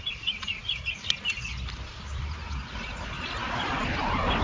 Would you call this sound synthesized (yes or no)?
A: no